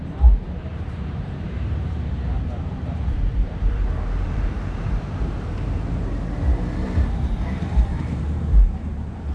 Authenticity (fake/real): fake